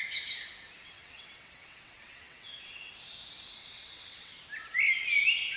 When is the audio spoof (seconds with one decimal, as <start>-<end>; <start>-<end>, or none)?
0.8-2.9; 3.6-4.4